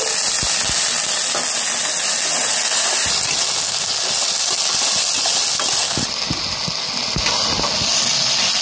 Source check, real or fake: real